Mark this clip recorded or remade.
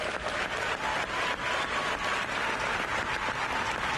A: recorded